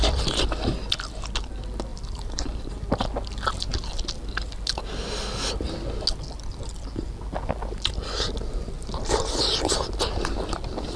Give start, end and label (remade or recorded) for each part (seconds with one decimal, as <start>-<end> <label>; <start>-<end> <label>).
0.0-1.9 recorded; 1.9-2.7 remade; 2.7-11.0 recorded